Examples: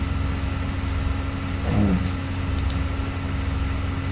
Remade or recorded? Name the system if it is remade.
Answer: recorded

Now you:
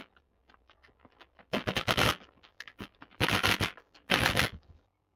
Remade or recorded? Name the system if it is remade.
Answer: remade, vocoder, BigVGAN v2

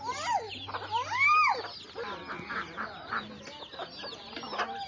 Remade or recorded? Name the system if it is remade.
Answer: recorded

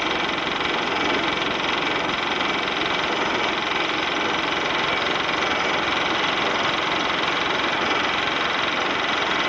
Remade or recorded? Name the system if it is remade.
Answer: recorded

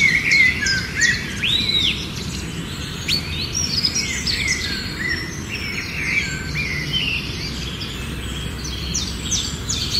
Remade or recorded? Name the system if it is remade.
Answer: remade, vocoder, BigVGAN v2